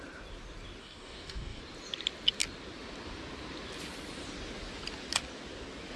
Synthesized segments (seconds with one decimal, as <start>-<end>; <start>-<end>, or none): 0.8-1.6

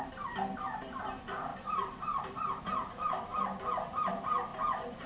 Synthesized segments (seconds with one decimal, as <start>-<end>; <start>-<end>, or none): 0.0-5.1

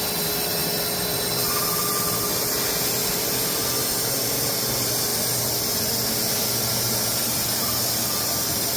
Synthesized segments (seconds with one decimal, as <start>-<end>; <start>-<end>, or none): none

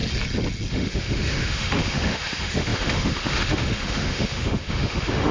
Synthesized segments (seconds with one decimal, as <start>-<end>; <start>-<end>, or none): 0.7-5.3

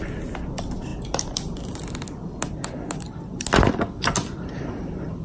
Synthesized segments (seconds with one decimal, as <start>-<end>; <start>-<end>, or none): none

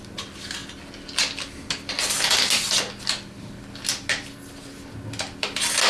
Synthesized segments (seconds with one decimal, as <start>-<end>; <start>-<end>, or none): none